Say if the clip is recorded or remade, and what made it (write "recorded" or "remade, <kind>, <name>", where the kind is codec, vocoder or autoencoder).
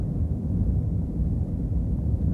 recorded